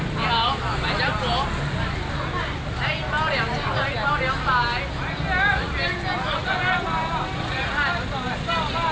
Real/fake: real